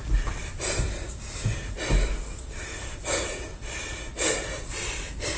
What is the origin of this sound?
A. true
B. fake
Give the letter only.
A